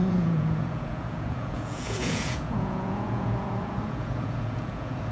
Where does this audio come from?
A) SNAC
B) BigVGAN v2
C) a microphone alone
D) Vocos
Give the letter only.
D